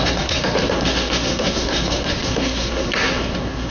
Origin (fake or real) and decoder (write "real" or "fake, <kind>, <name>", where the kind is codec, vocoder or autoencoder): fake, codec, SNAC